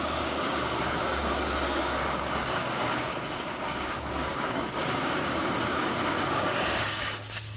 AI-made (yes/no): yes